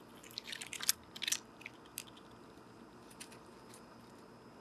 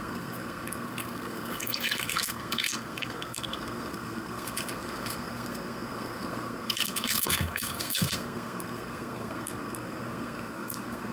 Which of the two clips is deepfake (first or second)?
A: second